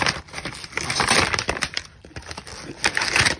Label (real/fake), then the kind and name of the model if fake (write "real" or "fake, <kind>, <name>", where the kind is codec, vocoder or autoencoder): real